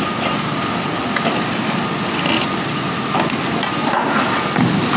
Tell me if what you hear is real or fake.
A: real